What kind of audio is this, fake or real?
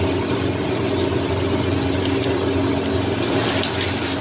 real